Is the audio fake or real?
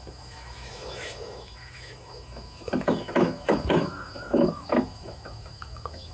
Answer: fake